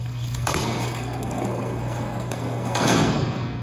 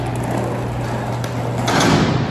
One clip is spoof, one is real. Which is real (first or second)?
second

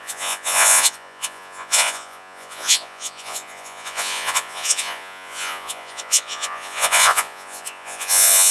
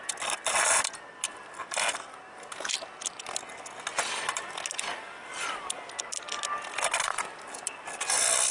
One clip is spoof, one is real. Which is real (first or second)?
second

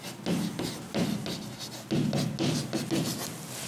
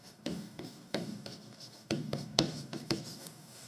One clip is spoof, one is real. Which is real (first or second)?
first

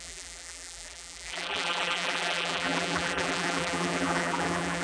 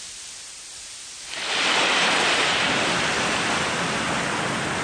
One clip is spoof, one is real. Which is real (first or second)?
second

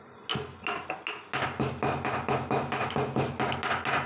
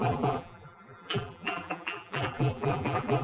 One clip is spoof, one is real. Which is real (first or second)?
first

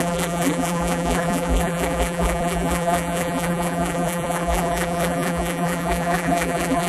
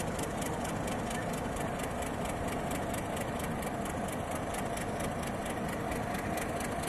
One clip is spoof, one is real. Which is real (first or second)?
second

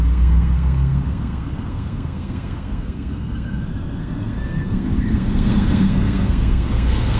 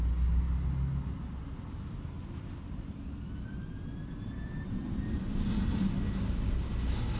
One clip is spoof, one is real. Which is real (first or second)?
second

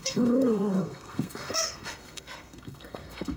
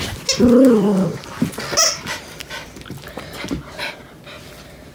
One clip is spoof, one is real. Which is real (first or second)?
second